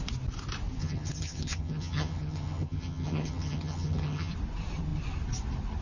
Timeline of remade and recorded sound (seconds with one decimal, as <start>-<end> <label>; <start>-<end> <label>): 0.0-0.8 recorded; 0.8-4.3 remade; 4.3-5.8 recorded